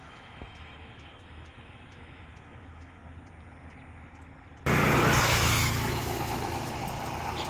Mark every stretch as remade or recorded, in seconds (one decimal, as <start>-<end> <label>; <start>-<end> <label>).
0.0-3.0 remade; 3.0-5.2 recorded; 5.2-6.8 remade; 6.8-7.5 recorded